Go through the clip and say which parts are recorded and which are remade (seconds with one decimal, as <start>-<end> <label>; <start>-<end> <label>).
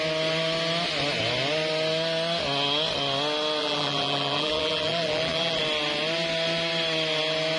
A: 0.0-3.6 recorded; 3.6-5.6 remade; 5.6-7.6 recorded